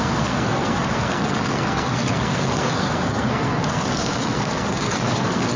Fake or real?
fake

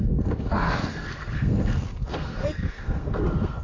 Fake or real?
fake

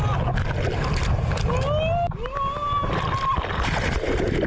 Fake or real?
real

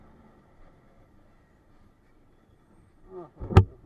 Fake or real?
real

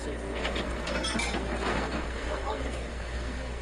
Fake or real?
fake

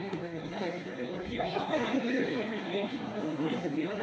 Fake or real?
fake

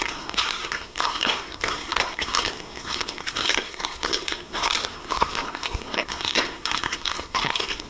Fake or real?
fake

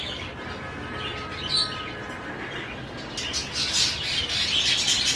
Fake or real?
real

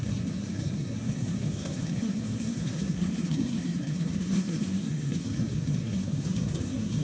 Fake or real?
fake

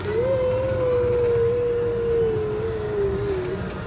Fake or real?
real